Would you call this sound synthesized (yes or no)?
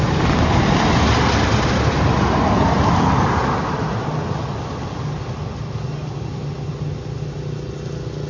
no